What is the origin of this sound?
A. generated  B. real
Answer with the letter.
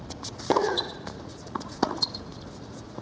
A